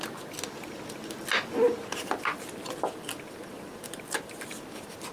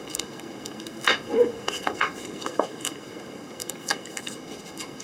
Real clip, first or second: first